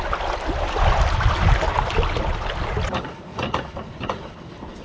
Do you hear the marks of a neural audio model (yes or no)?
no